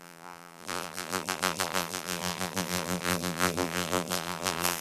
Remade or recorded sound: remade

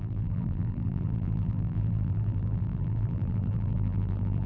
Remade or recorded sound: remade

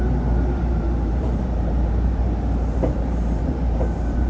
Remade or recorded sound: remade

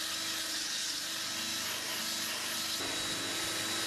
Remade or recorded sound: recorded